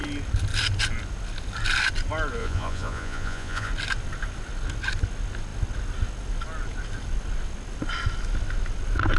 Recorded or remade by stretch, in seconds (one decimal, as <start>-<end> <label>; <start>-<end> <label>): 0.0-2.4 recorded; 2.4-3.7 remade; 3.7-9.2 recorded

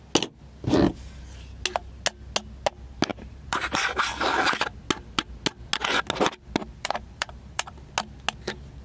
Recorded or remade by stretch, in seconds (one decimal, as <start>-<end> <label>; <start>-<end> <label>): 0.0-3.1 recorded; 3.1-4.0 remade; 4.0-6.6 recorded; 6.6-7.8 remade; 7.8-8.8 recorded

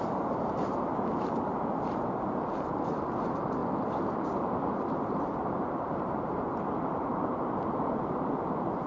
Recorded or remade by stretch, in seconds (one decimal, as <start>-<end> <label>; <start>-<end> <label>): 0.0-1.5 remade; 1.5-2.3 recorded; 2.3-8.9 remade

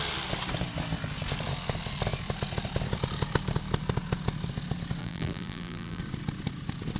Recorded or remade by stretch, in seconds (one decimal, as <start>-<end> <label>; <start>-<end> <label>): 0.0-5.0 recorded; 5.0-6.0 remade; 6.0-7.0 recorded

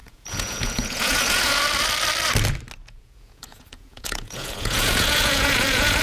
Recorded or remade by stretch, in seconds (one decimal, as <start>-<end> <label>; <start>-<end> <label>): 0.0-1.6 remade; 1.6-2.8 recorded; 2.8-6.0 remade

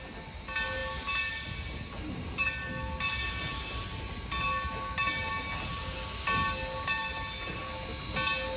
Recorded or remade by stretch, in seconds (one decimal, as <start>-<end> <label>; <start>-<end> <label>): 0.0-8.6 recorded